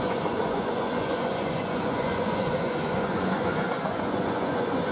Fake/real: fake